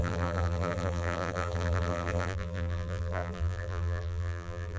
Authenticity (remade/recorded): remade